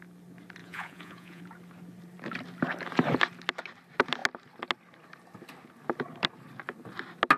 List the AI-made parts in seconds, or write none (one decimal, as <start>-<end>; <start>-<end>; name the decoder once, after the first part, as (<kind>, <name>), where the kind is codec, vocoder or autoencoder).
0.6-1.4 (vocoder, Vocos)